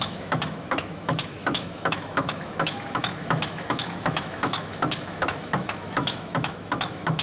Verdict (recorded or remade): remade